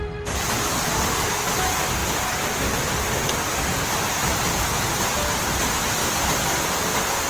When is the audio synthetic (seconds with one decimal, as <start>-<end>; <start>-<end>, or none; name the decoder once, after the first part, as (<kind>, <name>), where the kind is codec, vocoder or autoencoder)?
none